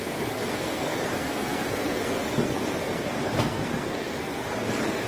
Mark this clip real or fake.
fake